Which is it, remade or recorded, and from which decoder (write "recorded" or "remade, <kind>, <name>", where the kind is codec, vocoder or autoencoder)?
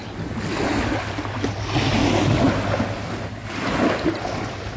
recorded